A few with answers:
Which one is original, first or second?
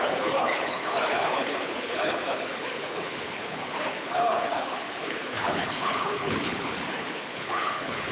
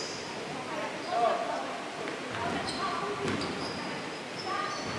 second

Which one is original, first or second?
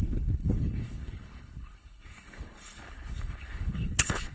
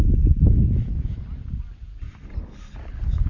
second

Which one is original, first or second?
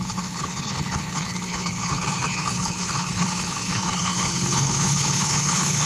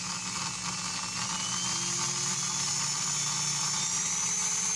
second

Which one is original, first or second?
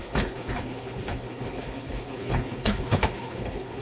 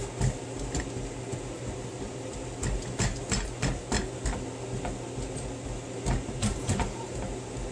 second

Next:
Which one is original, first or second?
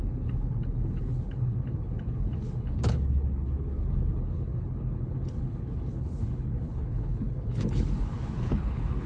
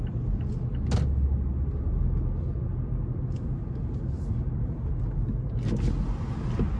second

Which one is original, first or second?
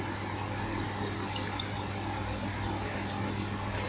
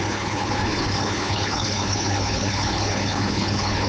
first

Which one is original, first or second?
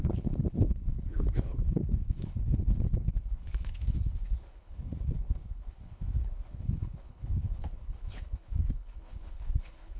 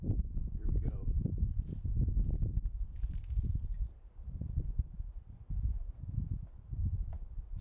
second